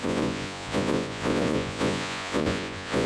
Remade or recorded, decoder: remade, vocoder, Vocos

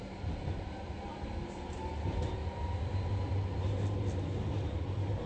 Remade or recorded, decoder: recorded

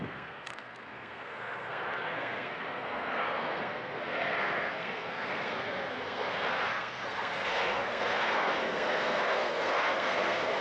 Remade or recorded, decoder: remade, codec, SNAC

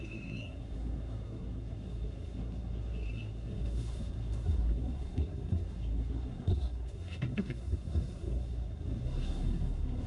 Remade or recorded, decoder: remade, codec, SNAC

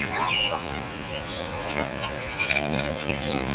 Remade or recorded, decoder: remade, vocoder, Vocos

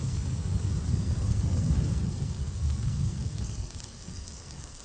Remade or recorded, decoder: remade, codec, SNAC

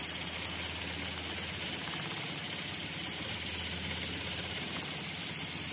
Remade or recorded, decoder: recorded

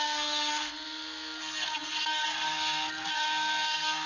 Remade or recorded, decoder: remade, codec, SNAC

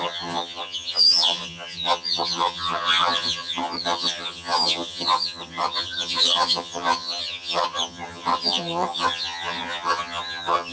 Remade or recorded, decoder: remade, vocoder, HiFi-GAN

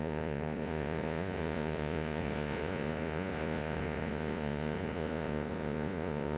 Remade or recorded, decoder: remade, vocoder, Vocos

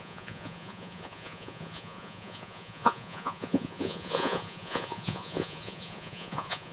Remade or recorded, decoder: remade, vocoder, Vocos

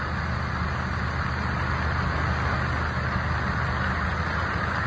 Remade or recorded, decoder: recorded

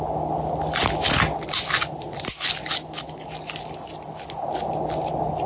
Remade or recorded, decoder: recorded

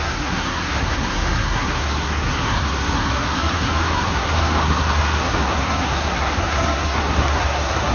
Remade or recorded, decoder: remade, codec, SNAC